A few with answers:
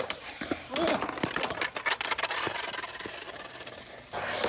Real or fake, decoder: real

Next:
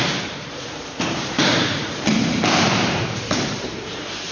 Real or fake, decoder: fake, vocoder, BigVGAN v2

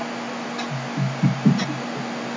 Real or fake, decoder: real